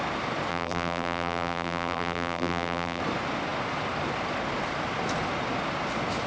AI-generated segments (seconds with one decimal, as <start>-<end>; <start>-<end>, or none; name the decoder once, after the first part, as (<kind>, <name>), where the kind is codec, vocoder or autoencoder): 0.5-3.0 (vocoder, BigVGAN v2)